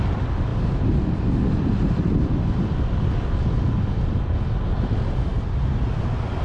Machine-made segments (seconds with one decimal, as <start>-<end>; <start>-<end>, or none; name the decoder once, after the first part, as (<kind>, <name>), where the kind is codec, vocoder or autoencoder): 0.5-4.0 (vocoder, BigVGAN v2)